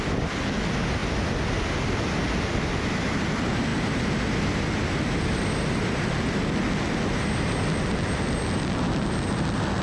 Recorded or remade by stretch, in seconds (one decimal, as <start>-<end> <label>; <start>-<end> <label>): 0.0-9.8 recorded